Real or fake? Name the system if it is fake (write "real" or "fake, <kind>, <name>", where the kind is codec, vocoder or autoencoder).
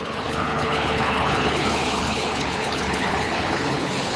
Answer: fake, codec, HILCodec